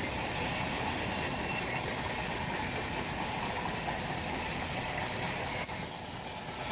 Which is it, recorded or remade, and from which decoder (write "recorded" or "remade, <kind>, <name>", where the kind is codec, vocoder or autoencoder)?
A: recorded